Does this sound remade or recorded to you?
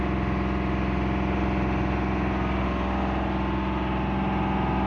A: recorded